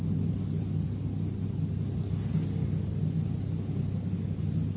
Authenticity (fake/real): real